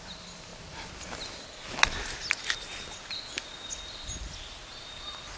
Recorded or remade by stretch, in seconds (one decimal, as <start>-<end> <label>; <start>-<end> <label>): 0.0-5.4 recorded